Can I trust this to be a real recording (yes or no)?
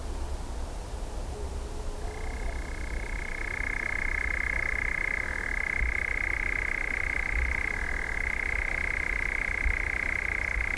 yes